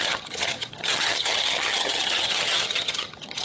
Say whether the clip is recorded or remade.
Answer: remade